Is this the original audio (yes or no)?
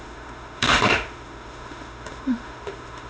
no